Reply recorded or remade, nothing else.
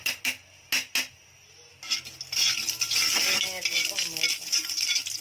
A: recorded